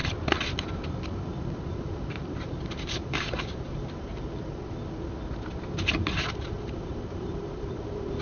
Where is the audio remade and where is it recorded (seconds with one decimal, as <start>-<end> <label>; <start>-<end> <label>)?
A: 0.0-1.7 recorded; 1.7-4.1 remade; 4.1-5.9 recorded; 5.9-8.2 remade